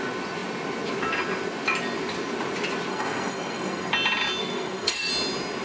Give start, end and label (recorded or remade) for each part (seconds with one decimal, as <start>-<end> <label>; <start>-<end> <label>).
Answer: 0.0-2.9 recorded; 2.9-3.9 remade; 3.9-4.4 recorded; 4.4-5.1 remade; 5.1-5.6 recorded